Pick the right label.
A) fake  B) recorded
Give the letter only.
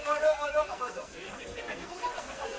A